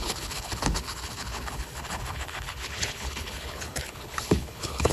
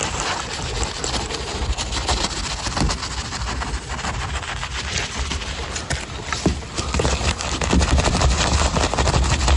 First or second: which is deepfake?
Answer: first